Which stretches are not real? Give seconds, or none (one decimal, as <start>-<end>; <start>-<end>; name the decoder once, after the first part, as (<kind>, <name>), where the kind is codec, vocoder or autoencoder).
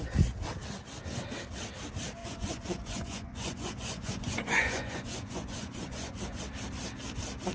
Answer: 2.2-6.4 (vocoder, Vocos)